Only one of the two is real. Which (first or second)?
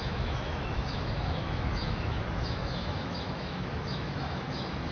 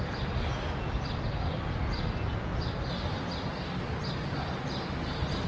second